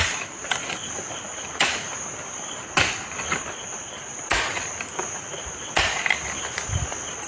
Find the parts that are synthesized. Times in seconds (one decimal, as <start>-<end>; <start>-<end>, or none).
none